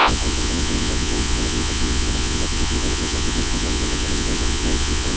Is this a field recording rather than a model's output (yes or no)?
no